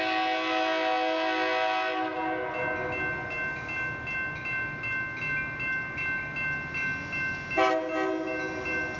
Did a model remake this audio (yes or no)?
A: no